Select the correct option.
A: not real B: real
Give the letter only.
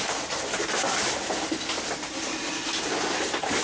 B